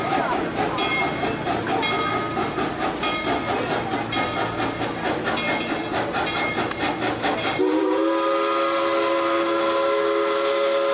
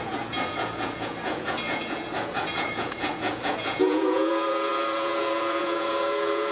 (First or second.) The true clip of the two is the first